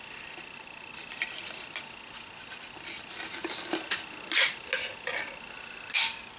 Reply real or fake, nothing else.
real